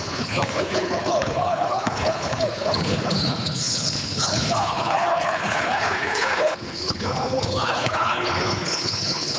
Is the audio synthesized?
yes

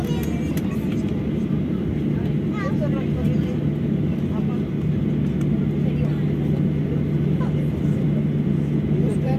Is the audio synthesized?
no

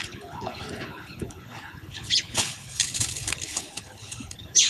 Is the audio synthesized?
yes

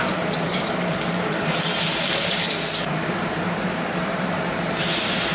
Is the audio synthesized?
yes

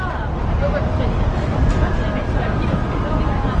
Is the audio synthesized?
no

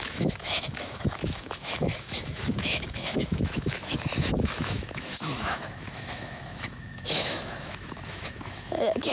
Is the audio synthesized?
yes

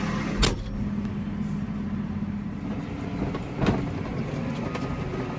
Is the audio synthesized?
no